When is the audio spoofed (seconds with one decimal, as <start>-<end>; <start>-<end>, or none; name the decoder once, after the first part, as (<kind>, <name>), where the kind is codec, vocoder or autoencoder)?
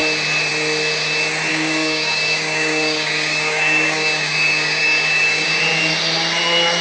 1.5-5.6 (codec, DAC)